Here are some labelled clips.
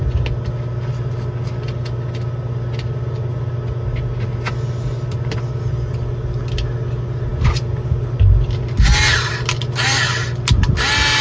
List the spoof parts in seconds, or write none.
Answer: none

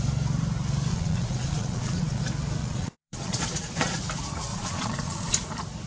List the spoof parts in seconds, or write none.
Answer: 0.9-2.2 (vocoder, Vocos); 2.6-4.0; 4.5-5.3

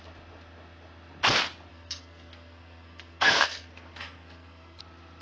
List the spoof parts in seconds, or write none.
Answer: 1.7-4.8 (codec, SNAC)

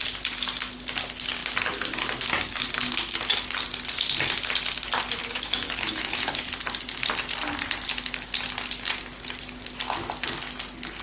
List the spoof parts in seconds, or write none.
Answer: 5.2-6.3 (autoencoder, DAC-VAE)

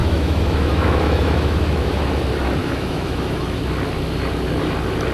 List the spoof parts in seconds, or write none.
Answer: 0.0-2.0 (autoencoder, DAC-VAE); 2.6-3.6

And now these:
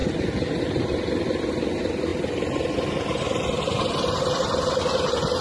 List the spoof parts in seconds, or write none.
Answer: none

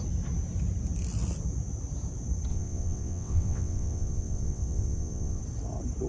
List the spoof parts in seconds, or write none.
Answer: 2.5-5.4 (vocoder, WaveNeXt)